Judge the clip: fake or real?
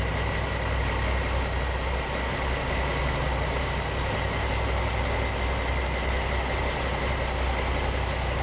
real